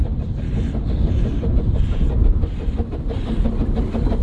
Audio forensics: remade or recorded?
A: recorded